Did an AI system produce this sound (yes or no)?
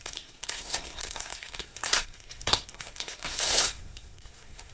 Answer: yes